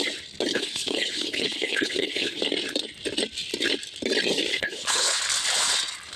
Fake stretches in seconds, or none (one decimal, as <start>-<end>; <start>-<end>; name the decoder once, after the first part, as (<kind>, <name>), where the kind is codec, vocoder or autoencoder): 0.5-2.4 (codec, HILCodec); 4.5-5.2

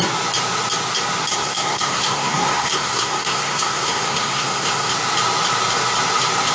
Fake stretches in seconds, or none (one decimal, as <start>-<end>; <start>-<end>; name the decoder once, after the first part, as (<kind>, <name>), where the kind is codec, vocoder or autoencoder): 1.3-4.9 (codec, SNAC)

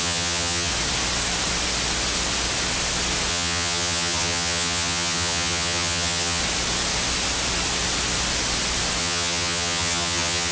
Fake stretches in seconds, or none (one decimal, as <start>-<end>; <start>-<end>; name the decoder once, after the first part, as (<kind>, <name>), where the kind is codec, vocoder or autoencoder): 0.0-0.7 (vocoder, HiFi-GAN); 3.3-6.4; 9.0-10.5